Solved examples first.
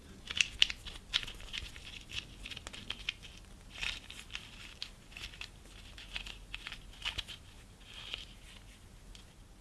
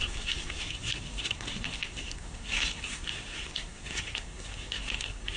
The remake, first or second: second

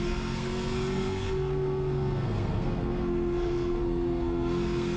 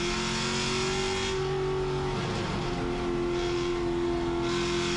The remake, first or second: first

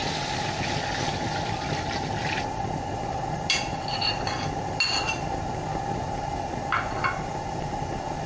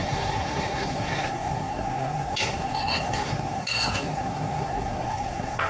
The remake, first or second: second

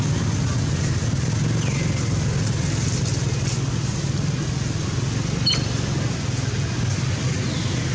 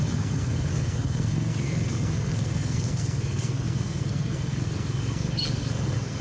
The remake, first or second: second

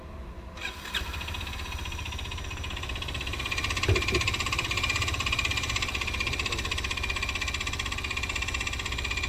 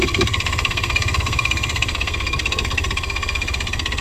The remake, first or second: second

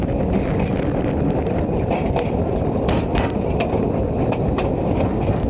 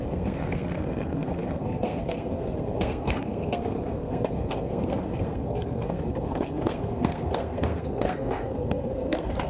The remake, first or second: second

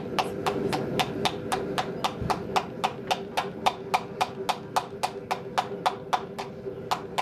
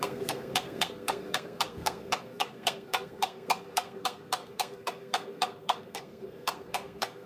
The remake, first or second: second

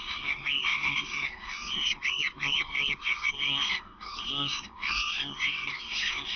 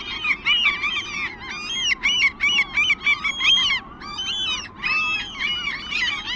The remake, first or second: first